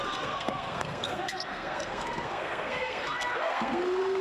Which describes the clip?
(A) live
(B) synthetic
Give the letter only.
B